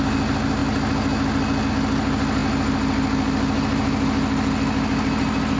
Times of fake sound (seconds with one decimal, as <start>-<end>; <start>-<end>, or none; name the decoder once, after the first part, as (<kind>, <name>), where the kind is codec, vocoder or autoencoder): none